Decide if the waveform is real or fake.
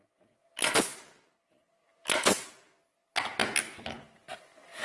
real